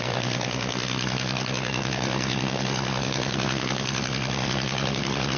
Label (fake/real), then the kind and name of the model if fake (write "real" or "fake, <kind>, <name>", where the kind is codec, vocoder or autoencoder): fake, codec, SNAC